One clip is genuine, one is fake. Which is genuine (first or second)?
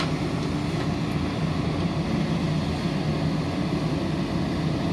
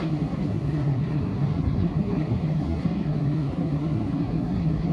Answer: first